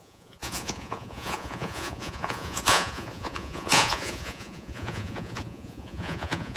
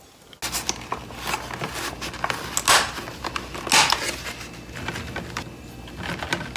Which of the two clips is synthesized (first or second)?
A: first